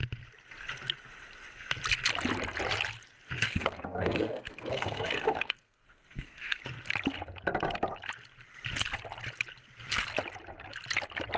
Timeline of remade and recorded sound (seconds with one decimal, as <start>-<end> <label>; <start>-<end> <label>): 0.0-3.4 recorded; 3.4-6.6 remade; 6.6-11.4 recorded